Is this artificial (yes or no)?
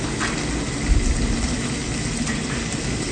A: no